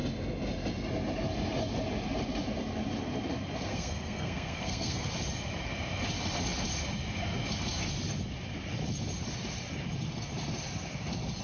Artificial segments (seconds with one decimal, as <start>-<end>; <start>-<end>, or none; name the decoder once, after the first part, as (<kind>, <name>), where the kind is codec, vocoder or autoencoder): 3.7-5.1 (codec, SNAC)